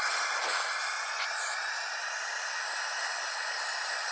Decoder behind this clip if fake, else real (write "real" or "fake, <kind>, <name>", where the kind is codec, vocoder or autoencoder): real